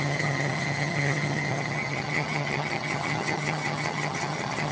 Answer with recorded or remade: remade